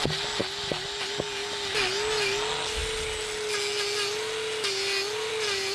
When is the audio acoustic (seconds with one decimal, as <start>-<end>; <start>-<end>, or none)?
0.0-5.7